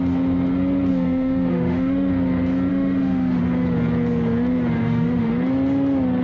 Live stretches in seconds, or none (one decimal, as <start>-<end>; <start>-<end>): 0.0-0.9; 2.1-2.7; 3.4-4.8; 5.3-6.2